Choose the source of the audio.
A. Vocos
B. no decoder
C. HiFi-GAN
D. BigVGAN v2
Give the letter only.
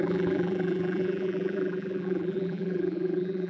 D